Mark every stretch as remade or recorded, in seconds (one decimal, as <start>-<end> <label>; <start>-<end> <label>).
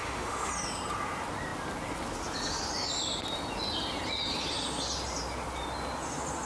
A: 0.0-0.5 remade; 0.5-6.5 recorded